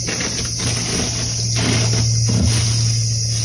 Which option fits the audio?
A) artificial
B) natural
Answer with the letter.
B